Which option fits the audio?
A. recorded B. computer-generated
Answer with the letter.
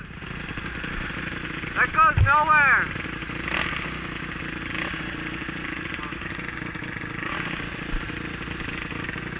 A